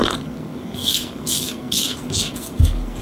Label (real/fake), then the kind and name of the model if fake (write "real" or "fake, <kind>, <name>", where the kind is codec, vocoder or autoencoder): fake, codec, SNAC